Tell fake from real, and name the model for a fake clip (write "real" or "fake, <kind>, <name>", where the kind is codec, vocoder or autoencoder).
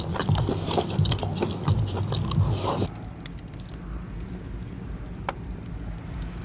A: real